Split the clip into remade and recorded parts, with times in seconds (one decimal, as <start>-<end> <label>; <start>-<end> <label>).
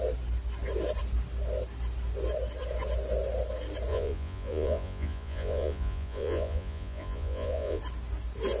0.0-3.9 recorded; 3.9-7.8 remade; 7.8-8.6 recorded